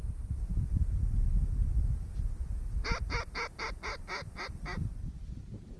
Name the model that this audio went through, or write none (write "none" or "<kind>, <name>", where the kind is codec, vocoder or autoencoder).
none